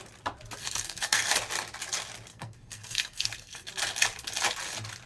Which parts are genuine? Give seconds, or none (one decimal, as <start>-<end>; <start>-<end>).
0.0-0.6; 1.3-2.3; 3.7-5.1